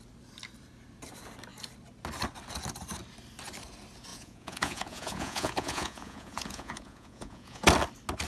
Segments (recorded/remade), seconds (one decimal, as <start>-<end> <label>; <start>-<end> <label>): 0.0-4.1 recorded; 4.1-7.6 remade; 7.6-8.3 recorded

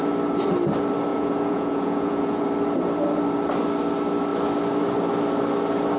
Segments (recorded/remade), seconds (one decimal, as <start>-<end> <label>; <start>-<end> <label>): 0.0-1.1 recorded; 1.1-2.4 remade; 2.4-6.0 recorded

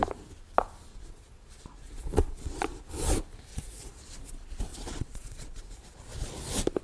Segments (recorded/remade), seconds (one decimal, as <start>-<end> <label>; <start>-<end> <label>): 0.0-0.9 recorded; 0.9-2.9 remade; 2.9-3.5 recorded; 3.5-4.2 remade; 4.2-4.7 recorded; 4.7-6.0 remade; 6.0-6.8 recorded

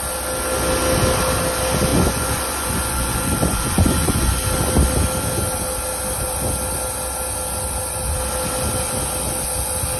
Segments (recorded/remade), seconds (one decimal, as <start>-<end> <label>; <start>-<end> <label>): 0.0-1.9 recorded; 1.9-4.4 remade; 4.4-10.0 recorded

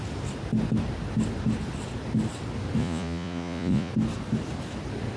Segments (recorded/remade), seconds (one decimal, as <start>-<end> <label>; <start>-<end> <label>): 0.0-2.8 recorded; 2.8-3.9 remade; 3.9-5.2 recorded

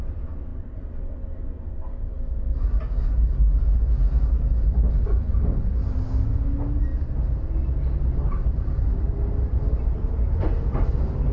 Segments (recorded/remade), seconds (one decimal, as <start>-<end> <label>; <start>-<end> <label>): 0.0-11.3 recorded

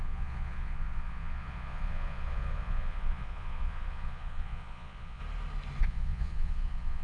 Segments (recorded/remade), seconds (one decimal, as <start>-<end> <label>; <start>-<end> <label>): 0.0-5.2 remade; 5.2-5.8 recorded; 5.8-7.0 remade